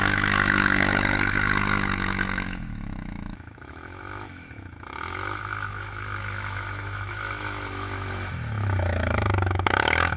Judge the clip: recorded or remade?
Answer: remade